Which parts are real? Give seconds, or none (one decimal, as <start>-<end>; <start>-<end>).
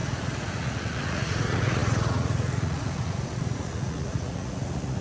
none